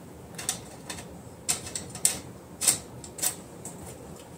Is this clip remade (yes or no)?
no